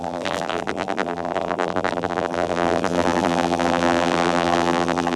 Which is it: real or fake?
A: fake